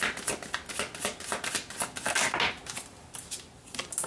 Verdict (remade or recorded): recorded